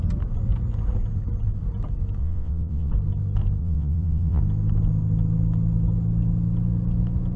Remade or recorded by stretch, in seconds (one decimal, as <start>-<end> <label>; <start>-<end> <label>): 0.0-2.2 recorded; 2.2-2.9 remade; 2.9-3.6 recorded; 3.6-4.4 remade; 4.4-7.4 recorded